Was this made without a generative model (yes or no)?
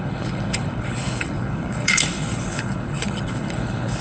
no